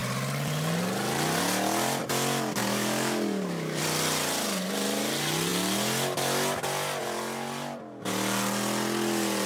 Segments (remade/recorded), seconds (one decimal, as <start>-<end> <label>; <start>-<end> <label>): 0.0-2.6 recorded; 2.6-3.8 remade; 3.8-9.5 recorded